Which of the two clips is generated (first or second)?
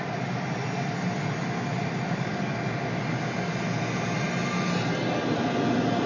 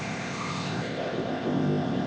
second